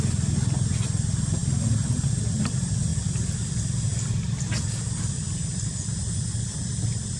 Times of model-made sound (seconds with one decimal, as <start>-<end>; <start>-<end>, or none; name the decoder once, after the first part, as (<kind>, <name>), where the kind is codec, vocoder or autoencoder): none

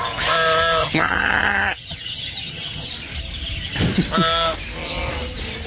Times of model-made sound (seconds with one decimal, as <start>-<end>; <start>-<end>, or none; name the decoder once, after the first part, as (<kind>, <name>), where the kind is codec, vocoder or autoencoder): 0.8-2.9 (vocoder, HiFi-GAN)

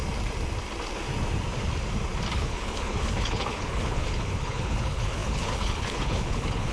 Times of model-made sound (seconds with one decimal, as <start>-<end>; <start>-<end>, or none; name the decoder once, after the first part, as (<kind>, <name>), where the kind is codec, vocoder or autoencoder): 2.3-6.7 (codec, HILCodec)

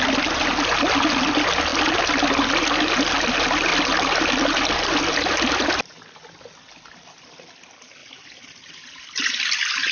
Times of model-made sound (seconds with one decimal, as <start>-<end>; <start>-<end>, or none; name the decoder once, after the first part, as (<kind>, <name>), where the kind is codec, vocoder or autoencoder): 3.7-6.7 (vocoder, BigVGAN v2); 8.0-9.3

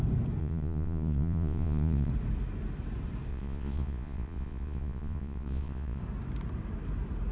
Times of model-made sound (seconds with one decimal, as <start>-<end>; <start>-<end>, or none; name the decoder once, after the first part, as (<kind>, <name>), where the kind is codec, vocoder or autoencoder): 0.4-2.1 (vocoder, Vocos); 3.3-6.0

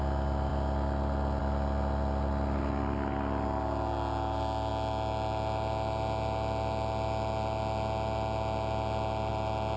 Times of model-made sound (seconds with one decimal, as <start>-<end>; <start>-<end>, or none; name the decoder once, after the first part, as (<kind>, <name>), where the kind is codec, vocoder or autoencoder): none